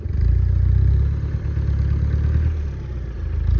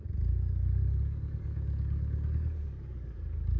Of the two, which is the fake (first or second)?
second